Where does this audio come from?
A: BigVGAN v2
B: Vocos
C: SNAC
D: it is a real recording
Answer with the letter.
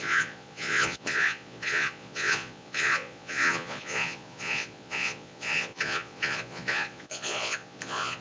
B